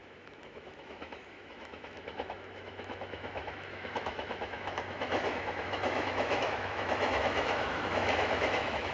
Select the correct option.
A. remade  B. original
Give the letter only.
A